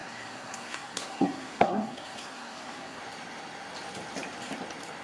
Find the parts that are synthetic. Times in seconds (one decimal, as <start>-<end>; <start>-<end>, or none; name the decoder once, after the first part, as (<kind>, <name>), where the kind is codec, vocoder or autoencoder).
0.0-3.0 (codec, SNAC)